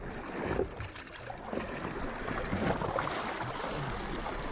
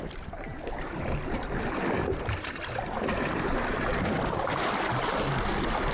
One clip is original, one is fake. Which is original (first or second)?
first